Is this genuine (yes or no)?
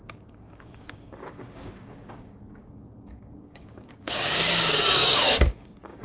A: no